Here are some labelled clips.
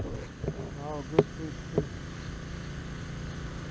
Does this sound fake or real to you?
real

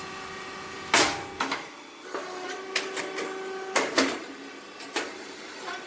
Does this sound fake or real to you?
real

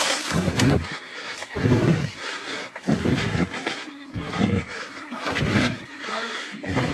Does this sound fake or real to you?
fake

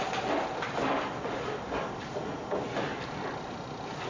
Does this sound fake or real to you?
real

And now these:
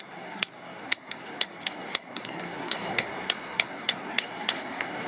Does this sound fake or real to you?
fake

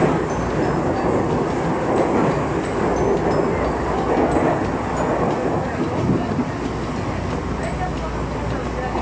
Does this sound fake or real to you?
real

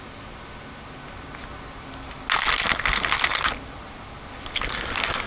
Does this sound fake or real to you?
real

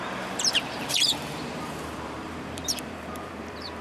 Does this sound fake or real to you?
fake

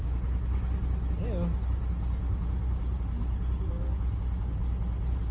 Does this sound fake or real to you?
real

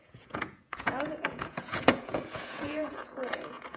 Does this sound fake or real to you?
fake